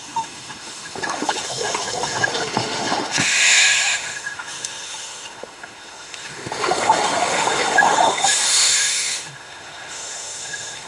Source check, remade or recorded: remade